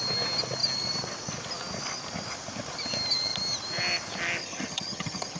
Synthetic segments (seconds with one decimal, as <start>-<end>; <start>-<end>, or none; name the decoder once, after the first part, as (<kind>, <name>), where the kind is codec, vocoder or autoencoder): 4.4-5.4 (vocoder, HiFi-GAN)